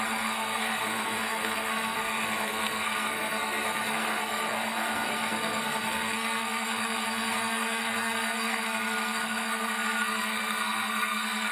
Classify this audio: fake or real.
fake